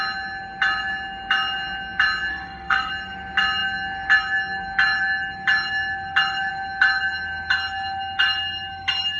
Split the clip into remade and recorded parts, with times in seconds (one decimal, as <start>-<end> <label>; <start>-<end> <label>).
0.0-2.3 recorded; 2.3-2.9 remade; 2.9-9.2 recorded